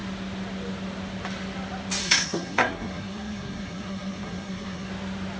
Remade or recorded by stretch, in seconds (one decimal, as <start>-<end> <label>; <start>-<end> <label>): 0.0-2.0 recorded; 2.0-4.9 remade; 4.9-5.4 recorded